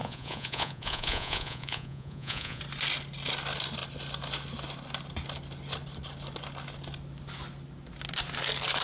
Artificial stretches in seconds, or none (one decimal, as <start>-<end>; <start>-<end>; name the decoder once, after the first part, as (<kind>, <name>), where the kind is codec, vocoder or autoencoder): 0.0-2.6 (vocoder, Vocos)